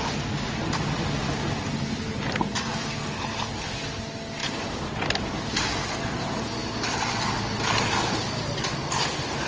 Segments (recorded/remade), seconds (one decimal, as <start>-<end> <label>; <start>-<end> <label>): 0.0-9.5 recorded